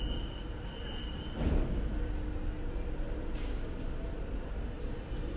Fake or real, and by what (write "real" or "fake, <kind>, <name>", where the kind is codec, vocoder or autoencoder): real